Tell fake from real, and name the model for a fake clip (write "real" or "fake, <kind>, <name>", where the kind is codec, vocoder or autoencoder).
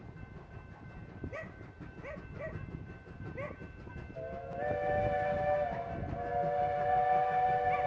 real